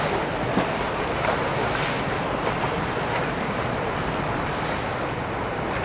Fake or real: real